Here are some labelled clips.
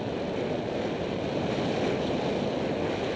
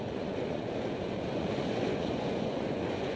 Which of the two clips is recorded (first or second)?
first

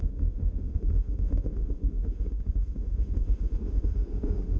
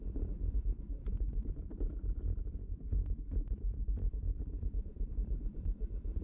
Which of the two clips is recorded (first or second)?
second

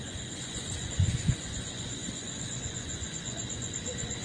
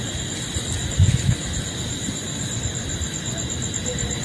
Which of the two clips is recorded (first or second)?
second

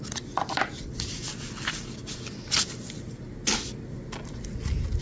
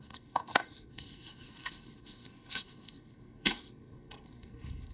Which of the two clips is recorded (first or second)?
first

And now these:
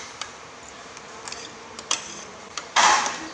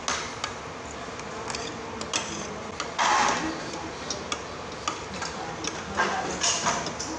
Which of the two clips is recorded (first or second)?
second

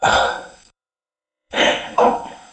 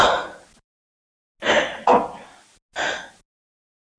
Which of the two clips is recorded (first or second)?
second